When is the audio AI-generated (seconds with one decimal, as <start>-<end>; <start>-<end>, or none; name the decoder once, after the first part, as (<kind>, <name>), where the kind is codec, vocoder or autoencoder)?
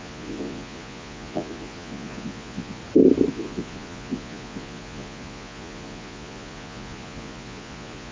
0.0-2.8 (vocoder, Vocos); 3.3-8.1